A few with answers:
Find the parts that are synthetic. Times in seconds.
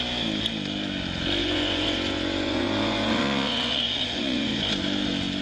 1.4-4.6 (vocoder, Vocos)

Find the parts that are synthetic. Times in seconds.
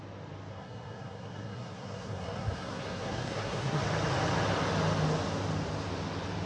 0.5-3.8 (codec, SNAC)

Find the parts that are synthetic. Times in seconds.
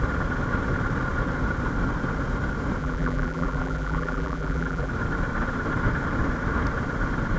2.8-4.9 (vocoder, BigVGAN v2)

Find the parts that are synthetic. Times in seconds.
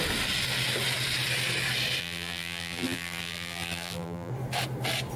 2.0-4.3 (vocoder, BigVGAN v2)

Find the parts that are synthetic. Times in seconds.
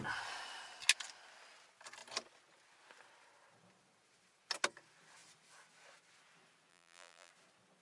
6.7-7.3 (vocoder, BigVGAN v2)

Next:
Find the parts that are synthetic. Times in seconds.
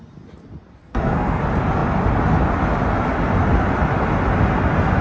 0.8-1.4 (codec, SNAC)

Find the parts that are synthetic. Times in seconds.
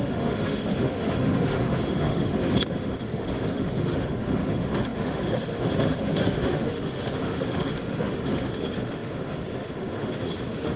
0.0-10.8 (autoencoder, DAC-VAE)